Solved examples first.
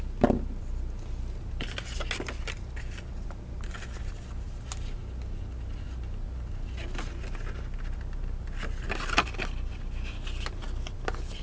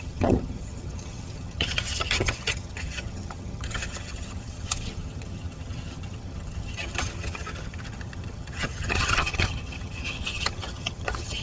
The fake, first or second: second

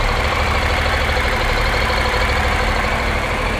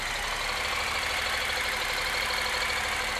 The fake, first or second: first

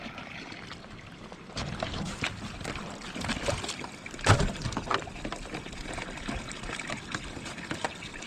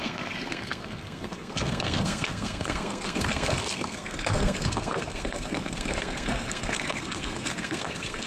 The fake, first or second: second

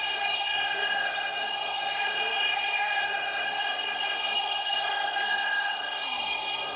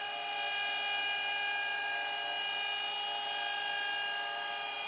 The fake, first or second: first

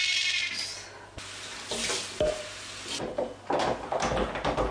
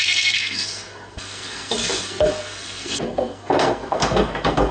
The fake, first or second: second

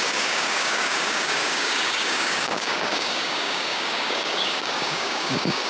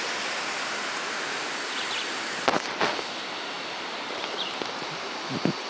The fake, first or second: first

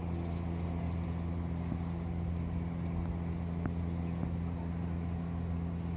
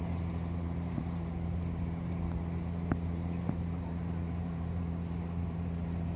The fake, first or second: second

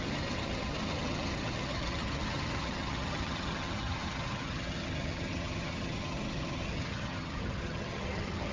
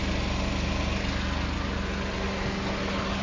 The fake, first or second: first